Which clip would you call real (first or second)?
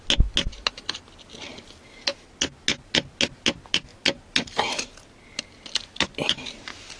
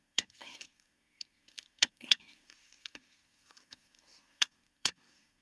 first